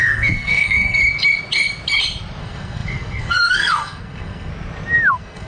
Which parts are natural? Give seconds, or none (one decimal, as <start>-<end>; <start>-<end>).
1.0-2.4; 4.5-5.1